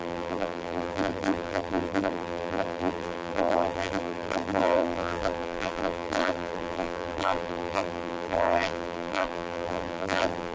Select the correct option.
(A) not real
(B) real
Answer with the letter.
A